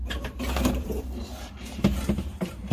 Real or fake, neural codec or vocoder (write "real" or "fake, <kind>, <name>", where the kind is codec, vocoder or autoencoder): fake, vocoder, BigVGAN v2